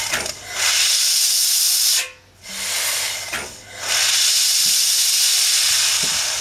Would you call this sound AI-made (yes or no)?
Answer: no